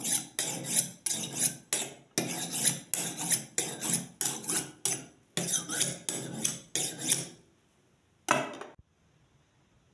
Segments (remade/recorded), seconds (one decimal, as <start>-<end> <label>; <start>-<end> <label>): 0.0-9.9 recorded